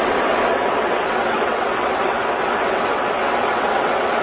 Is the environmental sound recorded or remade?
remade